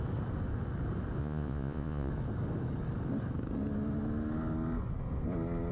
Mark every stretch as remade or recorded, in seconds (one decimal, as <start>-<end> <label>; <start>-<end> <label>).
0.0-1.2 recorded; 1.2-2.1 remade; 2.1-5.7 recorded